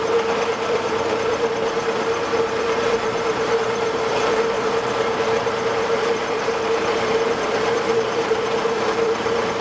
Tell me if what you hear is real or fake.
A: fake